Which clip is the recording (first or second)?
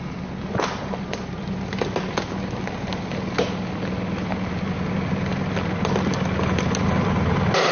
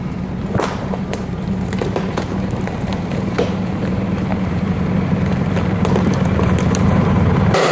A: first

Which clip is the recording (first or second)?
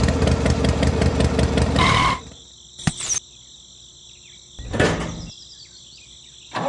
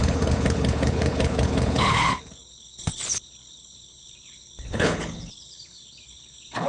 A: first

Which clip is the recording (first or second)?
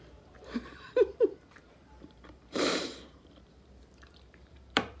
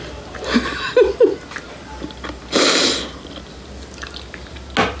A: second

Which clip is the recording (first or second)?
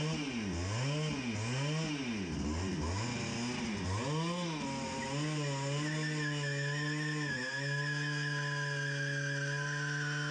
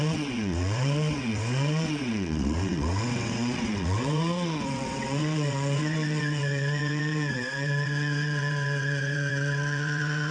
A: first